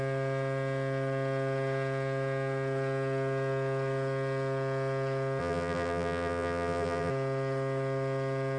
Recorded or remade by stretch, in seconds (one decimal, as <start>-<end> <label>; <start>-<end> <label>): 0.0-5.4 recorded; 5.4-7.1 remade; 7.1-8.6 recorded